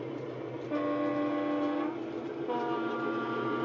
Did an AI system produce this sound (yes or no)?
no